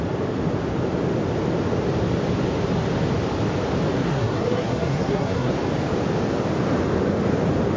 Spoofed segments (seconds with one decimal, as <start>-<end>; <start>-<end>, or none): 4.0-5.5